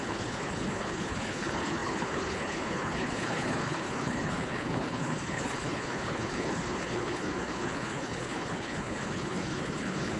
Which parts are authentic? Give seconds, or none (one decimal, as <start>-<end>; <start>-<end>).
none